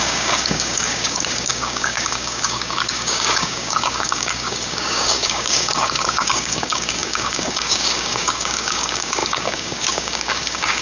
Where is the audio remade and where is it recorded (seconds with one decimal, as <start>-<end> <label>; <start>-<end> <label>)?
0.0-10.8 remade